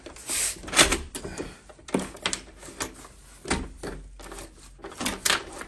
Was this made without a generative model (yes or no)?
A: yes